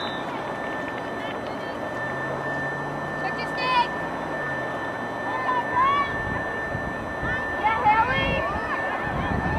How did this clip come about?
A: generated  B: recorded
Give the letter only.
B